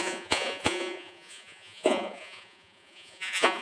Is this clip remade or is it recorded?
remade